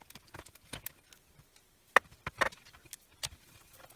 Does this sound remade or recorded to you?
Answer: recorded